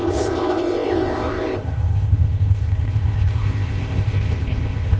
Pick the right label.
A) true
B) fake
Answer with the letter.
B